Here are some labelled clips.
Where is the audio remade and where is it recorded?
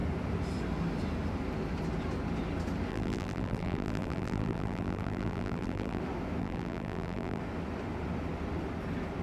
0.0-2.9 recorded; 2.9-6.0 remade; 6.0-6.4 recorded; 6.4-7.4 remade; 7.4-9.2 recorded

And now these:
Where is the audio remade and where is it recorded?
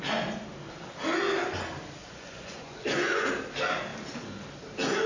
0.0-2.0 recorded; 2.0-3.3 remade; 3.3-5.1 recorded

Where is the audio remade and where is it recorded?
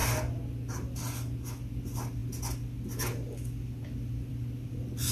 0.0-5.1 recorded